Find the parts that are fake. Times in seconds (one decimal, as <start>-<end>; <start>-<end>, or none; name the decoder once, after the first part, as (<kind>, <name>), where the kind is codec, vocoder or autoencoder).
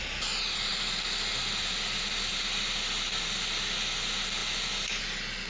none